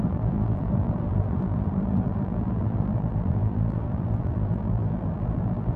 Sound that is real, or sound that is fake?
fake